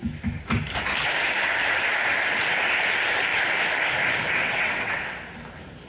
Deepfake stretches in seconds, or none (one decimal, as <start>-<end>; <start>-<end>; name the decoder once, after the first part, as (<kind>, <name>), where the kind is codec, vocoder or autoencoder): 4.4-5.0 (vocoder, WaveNeXt)